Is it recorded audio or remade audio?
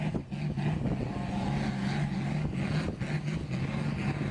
recorded